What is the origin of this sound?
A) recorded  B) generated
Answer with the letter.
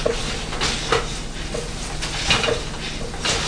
A